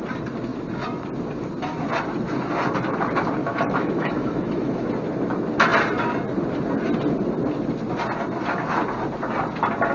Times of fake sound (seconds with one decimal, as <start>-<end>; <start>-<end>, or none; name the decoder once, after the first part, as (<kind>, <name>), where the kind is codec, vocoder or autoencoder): 3.4-4.9 (autoencoder, DAC-VAE)